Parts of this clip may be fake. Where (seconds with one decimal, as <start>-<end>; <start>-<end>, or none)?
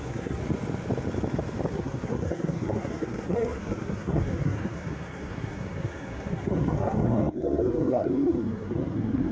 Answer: 0.0-0.4; 1.7-9.3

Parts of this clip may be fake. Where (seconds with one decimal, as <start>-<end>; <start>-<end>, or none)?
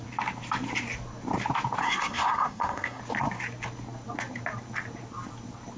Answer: 1.8-3.0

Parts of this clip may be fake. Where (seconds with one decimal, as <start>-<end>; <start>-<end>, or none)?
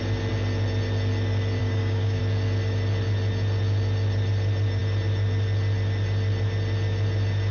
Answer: 1.6-2.2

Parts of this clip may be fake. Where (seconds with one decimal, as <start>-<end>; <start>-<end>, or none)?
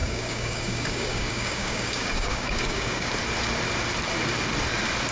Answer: 0.0-3.1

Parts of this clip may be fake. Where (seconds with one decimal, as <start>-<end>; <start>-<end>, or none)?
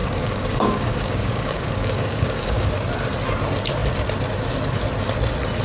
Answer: 0.0-2.7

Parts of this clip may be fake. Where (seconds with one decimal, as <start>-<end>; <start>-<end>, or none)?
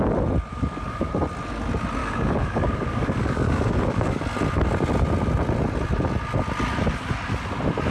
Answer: 0.5-1.1; 2.0-4.2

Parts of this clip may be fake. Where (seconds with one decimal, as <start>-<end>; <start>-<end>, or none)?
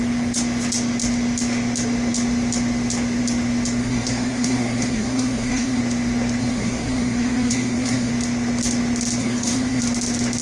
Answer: 3.8-5.8; 6.4-8.1; 9.2-9.8